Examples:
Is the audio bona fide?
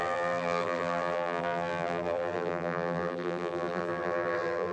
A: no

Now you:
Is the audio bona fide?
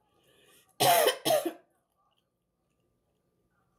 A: yes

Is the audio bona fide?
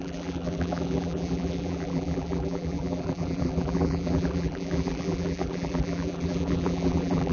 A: no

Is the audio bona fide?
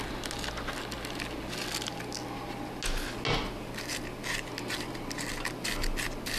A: yes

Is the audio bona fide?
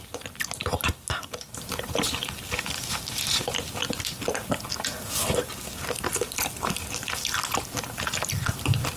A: yes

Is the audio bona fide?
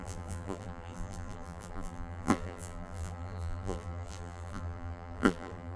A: no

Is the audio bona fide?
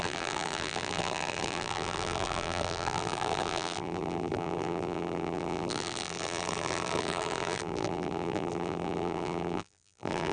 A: no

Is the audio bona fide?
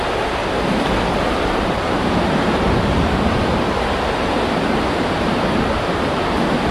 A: no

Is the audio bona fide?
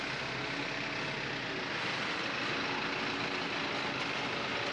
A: yes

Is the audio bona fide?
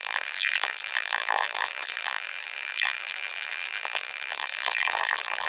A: no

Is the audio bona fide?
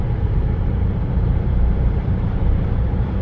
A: no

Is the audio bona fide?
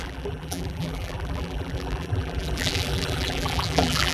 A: no